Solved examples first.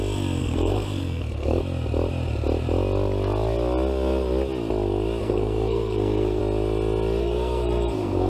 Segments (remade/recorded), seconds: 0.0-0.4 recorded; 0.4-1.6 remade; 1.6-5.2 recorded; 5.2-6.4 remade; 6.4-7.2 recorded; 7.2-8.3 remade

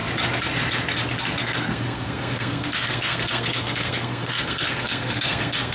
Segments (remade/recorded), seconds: 0.0-1.4 recorded; 1.4-5.7 remade

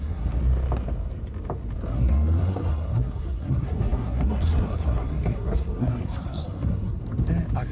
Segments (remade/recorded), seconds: 0.0-0.4 remade; 0.4-1.9 recorded; 1.9-7.0 remade; 7.0-7.7 recorded

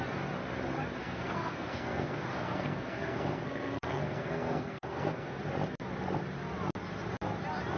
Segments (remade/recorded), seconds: 0.0-1.0 recorded; 1.0-5.4 remade; 5.4-7.8 recorded

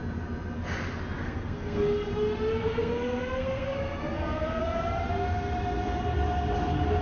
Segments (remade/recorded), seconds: 0.0-1.2 recorded; 1.2-2.1 remade; 2.1-2.6 recorded; 2.6-4.6 remade; 4.6-7.0 recorded

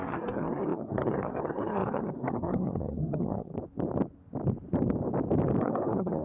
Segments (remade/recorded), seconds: 0.0-3.5 remade; 3.5-5.6 recorded; 5.6-6.2 remade

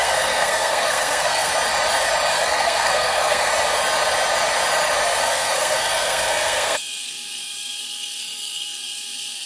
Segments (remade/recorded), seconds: 0.0-1.5 remade; 1.5-2.3 recorded; 2.3-3.5 remade; 3.5-5.2 recorded; 5.2-9.5 remade

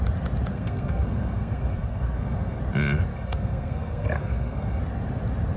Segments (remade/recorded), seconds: 0.0-0.5 recorded; 0.5-2.6 remade; 2.6-3.1 recorded; 3.1-4.8 remade; 4.8-5.6 recorded